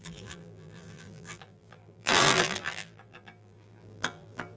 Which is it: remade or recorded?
remade